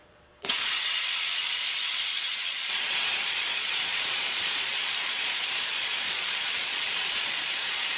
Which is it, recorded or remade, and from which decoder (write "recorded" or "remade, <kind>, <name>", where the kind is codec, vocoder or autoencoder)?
remade, vocoder, Vocos